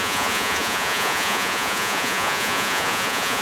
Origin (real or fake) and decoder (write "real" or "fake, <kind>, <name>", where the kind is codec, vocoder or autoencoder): fake, vocoder, Vocos